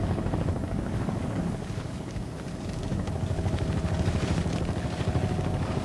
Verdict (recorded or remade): remade